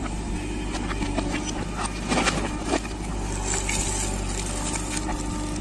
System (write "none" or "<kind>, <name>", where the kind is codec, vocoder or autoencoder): none